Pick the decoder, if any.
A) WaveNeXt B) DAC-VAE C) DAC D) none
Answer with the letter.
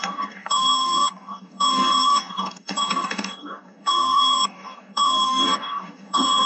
C